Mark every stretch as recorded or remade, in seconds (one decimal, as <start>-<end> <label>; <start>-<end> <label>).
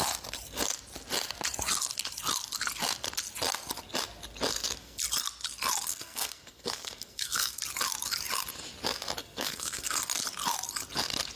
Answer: 0.0-4.5 recorded; 4.5-5.0 remade; 5.0-5.9 recorded; 5.9-7.6 remade; 7.6-9.2 recorded; 9.2-10.0 remade; 10.0-11.4 recorded